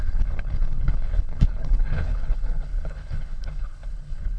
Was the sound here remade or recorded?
remade